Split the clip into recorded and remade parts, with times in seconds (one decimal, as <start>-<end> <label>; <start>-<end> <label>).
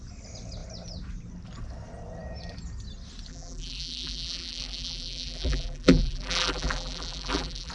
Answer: 0.0-3.3 recorded; 3.3-7.7 remade